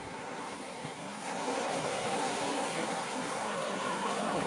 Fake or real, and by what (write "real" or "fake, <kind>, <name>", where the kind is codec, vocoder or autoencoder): fake, codec, SNAC